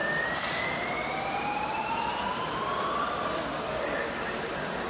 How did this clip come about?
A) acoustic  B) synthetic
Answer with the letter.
A